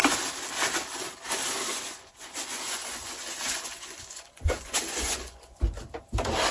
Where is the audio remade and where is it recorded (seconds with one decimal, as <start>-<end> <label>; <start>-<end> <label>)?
0.0-1.7 recorded; 1.7-5.6 remade; 5.6-6.5 recorded